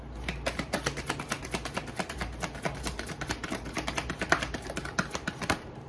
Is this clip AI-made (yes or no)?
no